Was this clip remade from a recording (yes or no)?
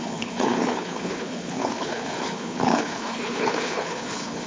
yes